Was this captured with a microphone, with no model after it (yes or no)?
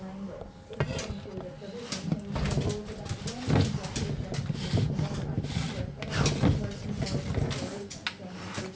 yes